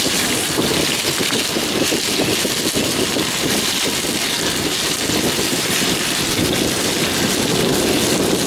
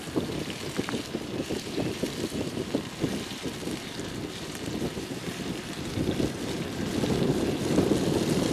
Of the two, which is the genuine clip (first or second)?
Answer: first